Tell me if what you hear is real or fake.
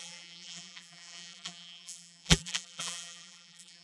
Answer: fake